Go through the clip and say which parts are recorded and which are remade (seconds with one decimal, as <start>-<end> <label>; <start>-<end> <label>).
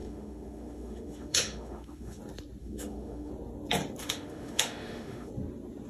0.0-2.2 remade; 2.2-2.6 recorded; 2.6-3.3 remade; 3.3-4.0 recorded; 4.0-5.3 remade; 5.3-5.9 recorded